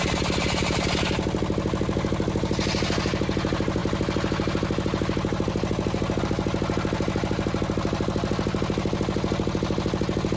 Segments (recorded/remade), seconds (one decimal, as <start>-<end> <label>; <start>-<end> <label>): 0.0-10.4 recorded